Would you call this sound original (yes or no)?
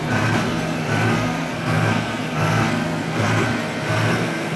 no